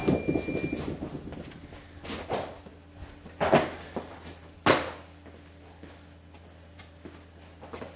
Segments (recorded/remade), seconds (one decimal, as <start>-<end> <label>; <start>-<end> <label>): 0.0-8.0 recorded